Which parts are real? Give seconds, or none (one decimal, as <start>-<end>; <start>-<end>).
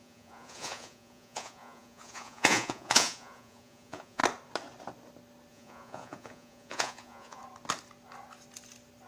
4.2-5.5; 7.4-9.1